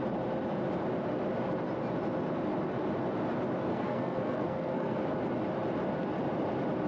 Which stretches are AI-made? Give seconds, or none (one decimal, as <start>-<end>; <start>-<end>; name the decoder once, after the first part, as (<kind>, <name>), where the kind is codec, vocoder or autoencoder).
3.7-5.0 (codec, SNAC)